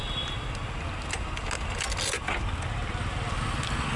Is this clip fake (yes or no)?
no